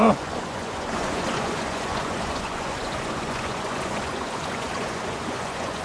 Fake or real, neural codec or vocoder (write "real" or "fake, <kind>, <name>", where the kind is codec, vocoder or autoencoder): fake, vocoder, Vocos